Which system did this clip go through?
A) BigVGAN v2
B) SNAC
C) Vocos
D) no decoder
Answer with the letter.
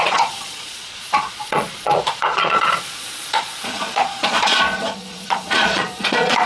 C